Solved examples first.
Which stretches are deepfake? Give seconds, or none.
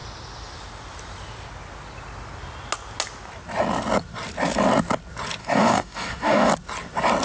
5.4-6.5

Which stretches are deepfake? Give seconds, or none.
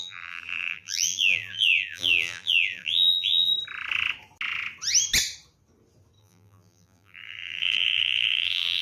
0.0-3.5; 6.2-8.8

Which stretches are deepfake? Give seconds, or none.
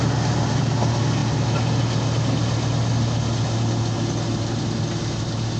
none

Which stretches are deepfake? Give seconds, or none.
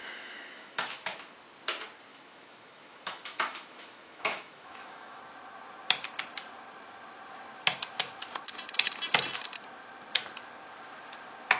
0.0-1.3; 2.1-5.2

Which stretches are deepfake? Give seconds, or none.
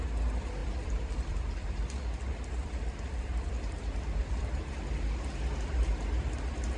0.6-4.7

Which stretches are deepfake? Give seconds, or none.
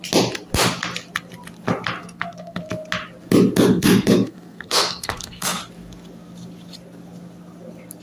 2.0-2.7; 3.7-5.6